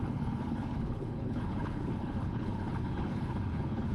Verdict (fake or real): fake